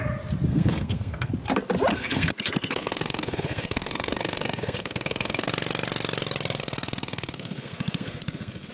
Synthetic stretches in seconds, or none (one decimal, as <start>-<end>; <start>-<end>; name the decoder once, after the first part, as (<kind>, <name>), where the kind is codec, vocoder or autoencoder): 0.5-1.3 (codec, SNAC); 1.9-5.5; 6.6-8.7